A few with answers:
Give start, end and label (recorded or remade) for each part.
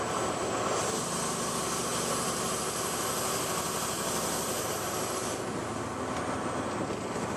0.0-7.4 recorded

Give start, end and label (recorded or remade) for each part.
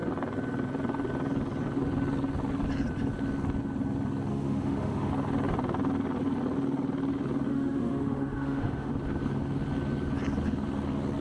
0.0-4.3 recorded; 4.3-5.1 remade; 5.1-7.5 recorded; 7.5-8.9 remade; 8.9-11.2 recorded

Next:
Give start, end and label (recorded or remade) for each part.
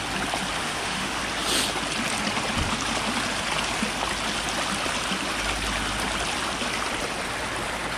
0.0-0.6 recorded; 0.6-1.2 remade; 1.2-8.0 recorded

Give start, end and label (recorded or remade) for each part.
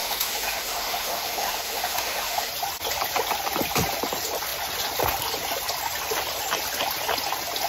0.0-2.5 remade; 2.5-7.7 recorded